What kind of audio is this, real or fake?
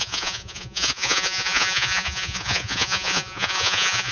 fake